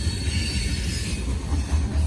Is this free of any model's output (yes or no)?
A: yes